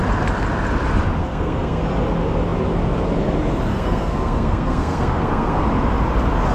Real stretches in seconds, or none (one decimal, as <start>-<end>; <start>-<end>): 0.0-1.2; 1.8-3.7; 5.6-6.5